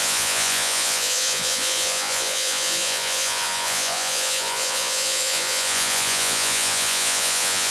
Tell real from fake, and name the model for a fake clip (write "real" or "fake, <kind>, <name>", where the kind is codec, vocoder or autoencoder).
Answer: fake, vocoder, Vocos